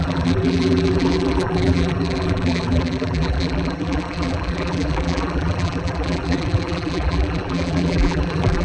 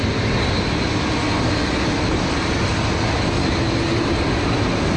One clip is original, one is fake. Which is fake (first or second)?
first